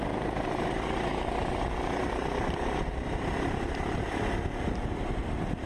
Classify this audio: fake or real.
real